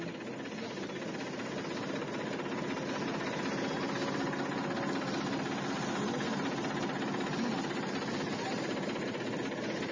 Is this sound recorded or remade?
recorded